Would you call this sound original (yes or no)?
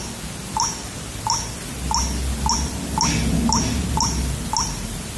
yes